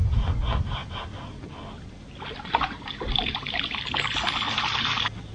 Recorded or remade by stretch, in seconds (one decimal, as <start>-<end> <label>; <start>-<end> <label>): 0.0-5.3 recorded